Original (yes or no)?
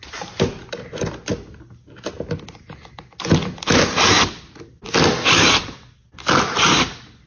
yes